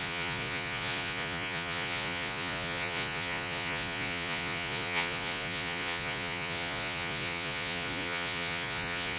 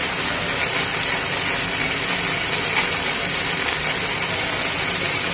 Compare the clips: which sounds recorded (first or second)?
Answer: second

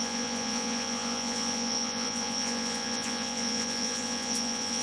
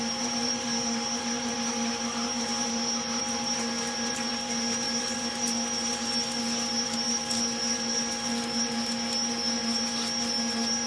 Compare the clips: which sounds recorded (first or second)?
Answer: second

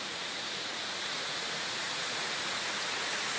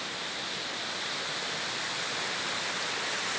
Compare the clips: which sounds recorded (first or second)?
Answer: second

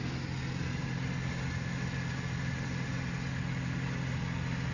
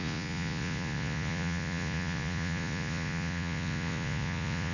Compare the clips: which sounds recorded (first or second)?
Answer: first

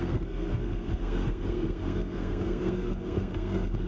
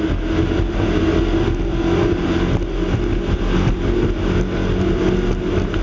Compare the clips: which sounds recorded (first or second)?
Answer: second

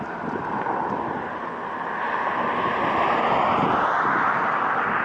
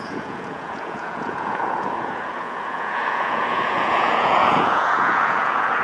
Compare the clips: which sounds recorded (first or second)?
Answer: first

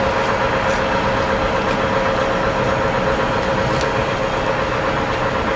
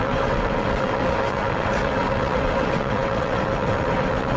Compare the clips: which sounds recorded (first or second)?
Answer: first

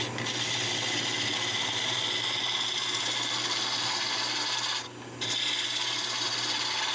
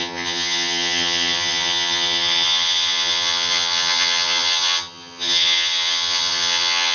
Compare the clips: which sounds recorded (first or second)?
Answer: first